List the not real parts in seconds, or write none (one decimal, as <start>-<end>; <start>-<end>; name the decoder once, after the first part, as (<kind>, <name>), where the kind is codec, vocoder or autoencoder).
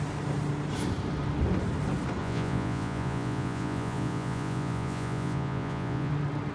2.2-6.1 (vocoder, Vocos)